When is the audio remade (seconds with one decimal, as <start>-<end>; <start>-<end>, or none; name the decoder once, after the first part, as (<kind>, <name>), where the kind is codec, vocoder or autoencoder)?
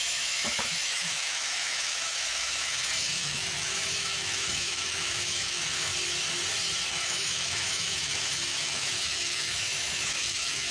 0.0-5.9 (autoencoder, DAC-VAE); 6.9-10.7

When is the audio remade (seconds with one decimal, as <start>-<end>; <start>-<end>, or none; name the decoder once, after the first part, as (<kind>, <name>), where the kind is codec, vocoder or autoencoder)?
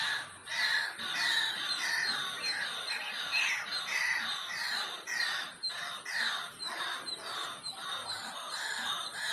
0.0-6.2 (vocoder, BigVGAN v2); 6.7-9.3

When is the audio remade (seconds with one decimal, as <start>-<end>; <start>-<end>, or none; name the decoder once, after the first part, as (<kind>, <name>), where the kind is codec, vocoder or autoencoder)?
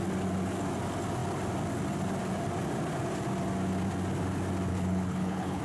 4.7-5.6 (codec, HILCodec)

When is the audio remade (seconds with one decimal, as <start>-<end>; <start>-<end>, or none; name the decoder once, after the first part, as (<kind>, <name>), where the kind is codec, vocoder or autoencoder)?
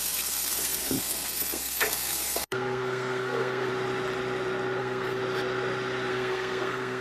0.0-3.7 (codec, SNAC); 4.8-5.2; 6.1-7.0